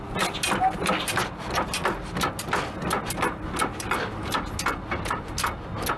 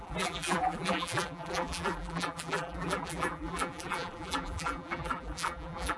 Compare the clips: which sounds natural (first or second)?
first